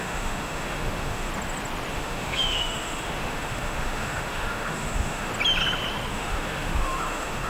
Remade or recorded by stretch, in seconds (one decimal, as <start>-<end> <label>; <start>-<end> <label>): 0.0-1.3 remade; 1.3-1.9 recorded; 1.9-5.3 remade; 5.3-6.1 recorded; 6.1-7.5 remade